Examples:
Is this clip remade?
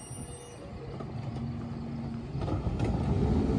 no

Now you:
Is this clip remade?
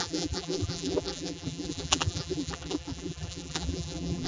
yes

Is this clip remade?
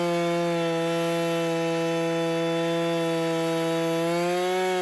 no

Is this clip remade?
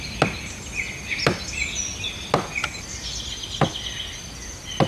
no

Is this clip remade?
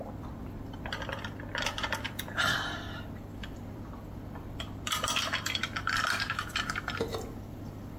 yes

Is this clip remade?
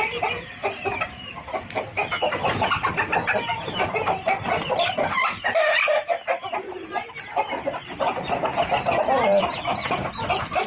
yes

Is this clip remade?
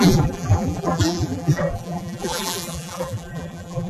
yes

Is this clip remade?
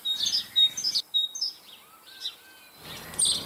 no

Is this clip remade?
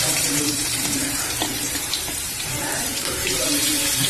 yes